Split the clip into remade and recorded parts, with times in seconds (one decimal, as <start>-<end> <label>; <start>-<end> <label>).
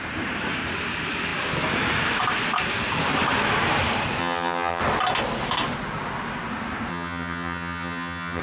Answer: 0.0-4.2 recorded; 4.2-4.8 remade; 4.8-6.9 recorded; 6.9-8.4 remade